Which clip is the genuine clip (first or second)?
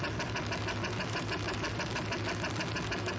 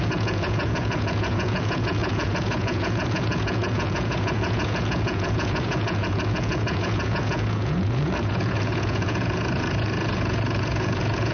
first